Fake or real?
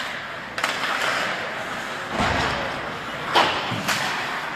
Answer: real